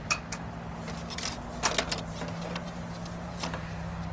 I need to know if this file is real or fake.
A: real